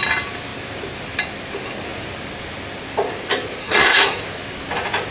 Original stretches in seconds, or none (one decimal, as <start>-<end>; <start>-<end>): 0.0-3.6; 4.2-5.1